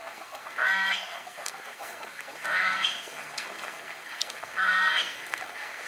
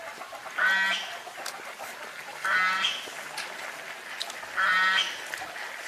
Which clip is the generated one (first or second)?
first